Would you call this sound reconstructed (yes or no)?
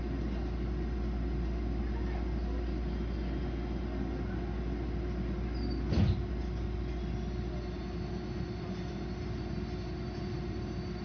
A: no